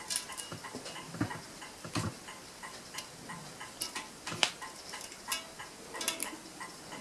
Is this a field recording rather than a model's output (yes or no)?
yes